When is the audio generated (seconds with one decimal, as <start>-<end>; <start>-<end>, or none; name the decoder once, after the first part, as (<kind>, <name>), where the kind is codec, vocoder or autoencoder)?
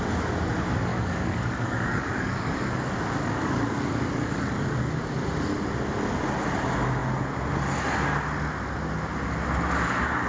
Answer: 0.9-4.9 (codec, DAC)